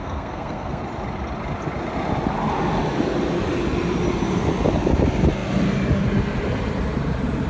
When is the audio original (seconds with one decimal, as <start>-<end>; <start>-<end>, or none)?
0.8-7.5